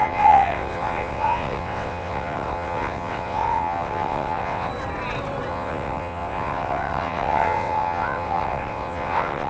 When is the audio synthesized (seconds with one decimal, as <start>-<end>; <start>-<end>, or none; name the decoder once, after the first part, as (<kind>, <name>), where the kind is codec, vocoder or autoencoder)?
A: 0.0-4.7 (vocoder, WaveNeXt); 5.5-9.5